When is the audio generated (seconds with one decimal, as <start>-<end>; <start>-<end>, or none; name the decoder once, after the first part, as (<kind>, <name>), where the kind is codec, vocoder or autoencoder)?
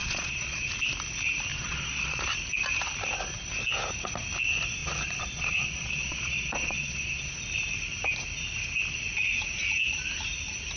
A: 0.0-0.7 (vocoder, Vocos); 1.5-2.2; 4.8-7.3